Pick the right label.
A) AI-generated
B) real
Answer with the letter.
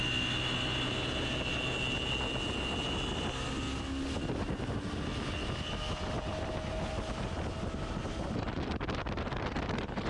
B